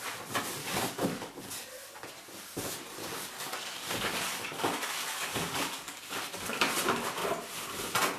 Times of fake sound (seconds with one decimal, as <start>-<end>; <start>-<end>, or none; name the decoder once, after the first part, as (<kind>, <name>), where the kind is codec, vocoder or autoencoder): 0.6-1.5 (codec, DAC); 3.0-6.7